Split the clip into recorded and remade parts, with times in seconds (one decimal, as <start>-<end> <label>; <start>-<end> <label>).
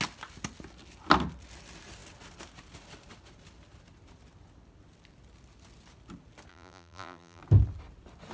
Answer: 0.0-6.5 recorded; 6.5-7.4 remade; 7.4-8.3 recorded